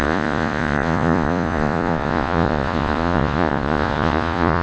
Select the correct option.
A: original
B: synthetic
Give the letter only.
B